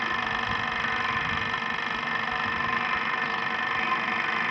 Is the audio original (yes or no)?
yes